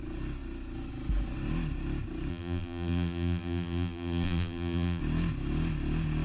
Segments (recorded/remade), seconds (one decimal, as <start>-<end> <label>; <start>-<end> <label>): 0.0-2.3 recorded; 2.3-5.0 remade; 5.0-6.2 recorded